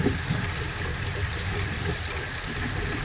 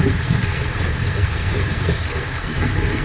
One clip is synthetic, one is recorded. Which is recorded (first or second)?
first